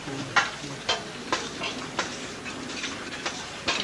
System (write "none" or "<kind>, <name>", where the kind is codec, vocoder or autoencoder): none